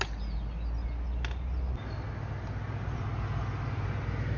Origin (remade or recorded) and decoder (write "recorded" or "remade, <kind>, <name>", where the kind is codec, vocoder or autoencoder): recorded